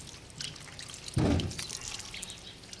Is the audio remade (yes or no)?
no